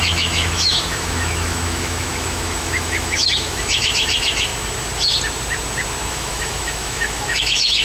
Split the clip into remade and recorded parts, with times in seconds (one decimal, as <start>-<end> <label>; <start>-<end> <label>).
0.0-4.5 remade; 4.5-6.1 recorded; 6.1-7.8 remade